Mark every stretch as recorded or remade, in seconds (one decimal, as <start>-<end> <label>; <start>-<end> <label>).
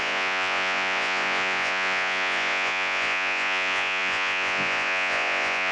0.0-5.7 remade